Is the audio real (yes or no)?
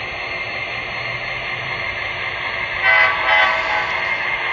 yes